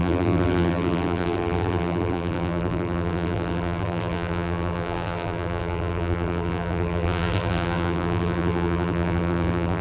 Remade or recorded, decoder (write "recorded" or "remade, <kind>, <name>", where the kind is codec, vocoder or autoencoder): remade, vocoder, BigVGAN v2